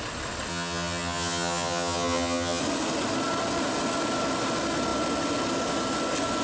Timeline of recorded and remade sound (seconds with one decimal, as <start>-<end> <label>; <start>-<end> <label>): 0.0-0.5 recorded; 0.5-2.6 remade; 2.6-6.4 recorded